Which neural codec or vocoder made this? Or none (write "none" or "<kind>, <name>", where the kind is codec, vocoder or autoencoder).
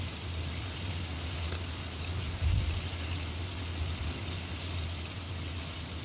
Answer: none